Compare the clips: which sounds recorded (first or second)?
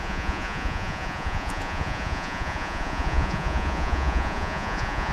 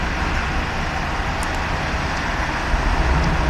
second